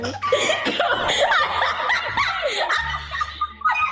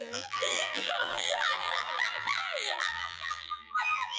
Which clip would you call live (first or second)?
first